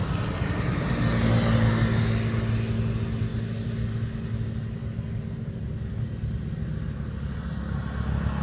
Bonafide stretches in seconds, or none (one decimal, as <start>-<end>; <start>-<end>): 0.0-8.4